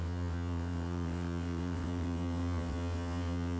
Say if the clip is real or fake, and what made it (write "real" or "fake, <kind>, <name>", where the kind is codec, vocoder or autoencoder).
fake, vocoder, WaveNeXt